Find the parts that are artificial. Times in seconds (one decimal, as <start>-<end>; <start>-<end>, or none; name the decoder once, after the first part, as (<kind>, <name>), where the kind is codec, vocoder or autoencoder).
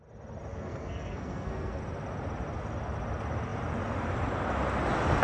0.5-1.8 (codec, SNAC)